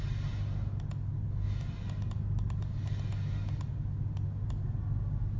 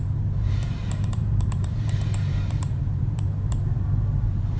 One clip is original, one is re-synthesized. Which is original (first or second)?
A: first